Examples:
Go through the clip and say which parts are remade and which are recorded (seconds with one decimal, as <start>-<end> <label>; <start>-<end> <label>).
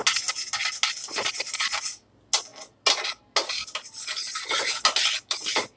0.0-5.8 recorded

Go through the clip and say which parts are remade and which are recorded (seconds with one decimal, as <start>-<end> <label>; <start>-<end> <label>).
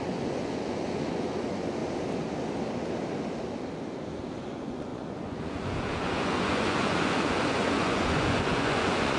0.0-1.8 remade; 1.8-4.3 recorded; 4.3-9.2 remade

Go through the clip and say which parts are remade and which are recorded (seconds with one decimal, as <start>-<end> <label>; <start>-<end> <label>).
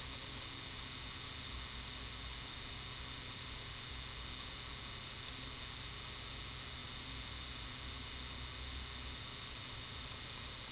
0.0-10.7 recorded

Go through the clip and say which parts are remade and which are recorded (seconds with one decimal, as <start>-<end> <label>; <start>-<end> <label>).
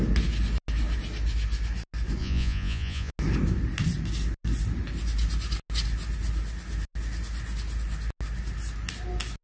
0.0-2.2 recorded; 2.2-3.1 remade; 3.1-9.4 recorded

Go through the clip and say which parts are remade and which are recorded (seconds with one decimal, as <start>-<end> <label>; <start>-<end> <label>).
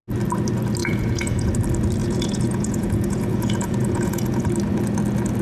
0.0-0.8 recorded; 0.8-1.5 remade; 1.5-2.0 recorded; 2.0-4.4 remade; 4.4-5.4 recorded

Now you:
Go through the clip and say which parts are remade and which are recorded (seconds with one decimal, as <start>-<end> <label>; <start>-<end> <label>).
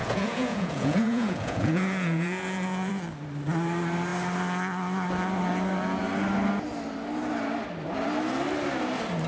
0.0-2.9 remade; 2.9-9.3 recorded